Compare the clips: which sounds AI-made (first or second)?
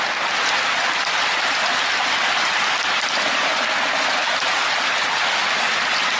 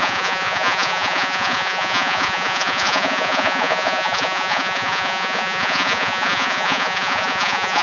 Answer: second